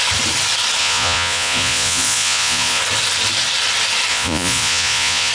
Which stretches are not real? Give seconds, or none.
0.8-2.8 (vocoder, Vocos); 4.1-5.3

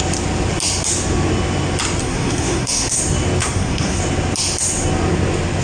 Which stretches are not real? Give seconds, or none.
2.0-3.0 (codec, SNAC); 3.4-4.0